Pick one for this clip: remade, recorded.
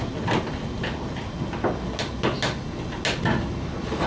recorded